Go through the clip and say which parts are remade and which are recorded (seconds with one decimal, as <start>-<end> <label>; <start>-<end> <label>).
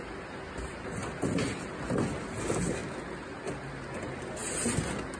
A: 0.0-5.2 recorded